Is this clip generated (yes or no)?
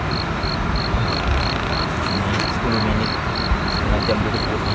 no